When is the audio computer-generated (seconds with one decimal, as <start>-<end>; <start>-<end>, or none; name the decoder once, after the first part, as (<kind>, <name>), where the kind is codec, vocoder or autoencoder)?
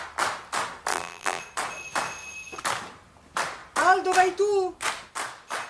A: 0.9-1.4 (vocoder, BigVGAN v2)